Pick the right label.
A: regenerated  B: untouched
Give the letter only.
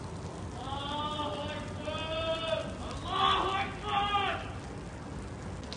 B